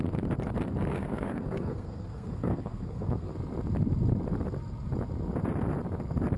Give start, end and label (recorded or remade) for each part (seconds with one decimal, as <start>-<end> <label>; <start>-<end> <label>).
0.0-0.9 recorded; 0.9-3.3 remade; 3.3-6.4 recorded